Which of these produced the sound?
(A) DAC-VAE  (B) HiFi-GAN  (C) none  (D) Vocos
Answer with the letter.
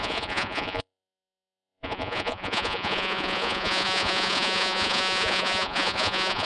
D